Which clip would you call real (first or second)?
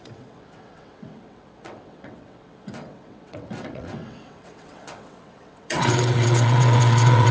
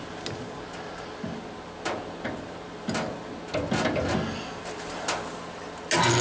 second